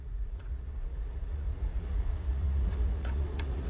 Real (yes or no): no